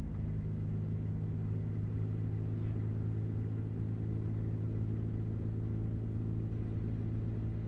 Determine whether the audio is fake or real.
real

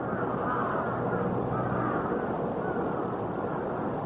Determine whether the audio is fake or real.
real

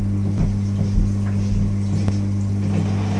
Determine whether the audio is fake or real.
real